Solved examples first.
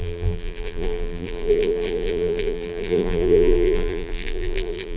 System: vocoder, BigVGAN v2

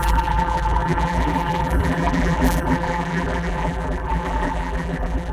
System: vocoder, BigVGAN v2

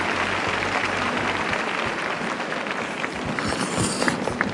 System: vocoder, BigVGAN v2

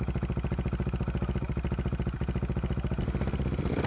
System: vocoder, BigVGAN v2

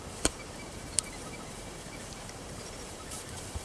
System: vocoder, BigVGAN v2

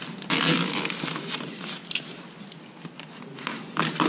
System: none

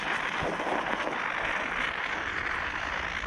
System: none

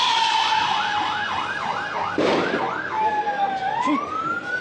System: none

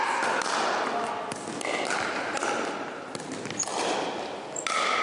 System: none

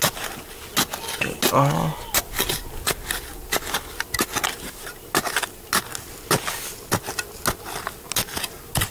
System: none